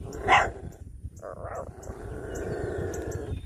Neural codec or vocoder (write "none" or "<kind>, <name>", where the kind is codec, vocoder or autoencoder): vocoder, BigVGAN v2